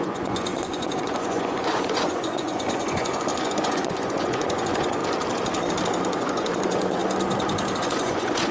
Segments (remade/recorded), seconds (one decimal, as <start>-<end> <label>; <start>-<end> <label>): 0.0-5.0 remade; 5.0-6.0 recorded; 6.0-7.0 remade; 7.0-7.8 recorded; 7.8-8.5 remade